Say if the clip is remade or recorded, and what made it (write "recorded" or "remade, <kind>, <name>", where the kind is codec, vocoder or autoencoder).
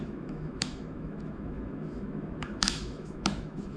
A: remade, autoencoder, DAC-VAE